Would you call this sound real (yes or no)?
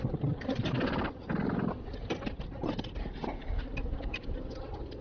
yes